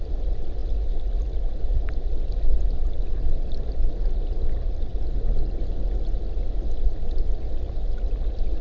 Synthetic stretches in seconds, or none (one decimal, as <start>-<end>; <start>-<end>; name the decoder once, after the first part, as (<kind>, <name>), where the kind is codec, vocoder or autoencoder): none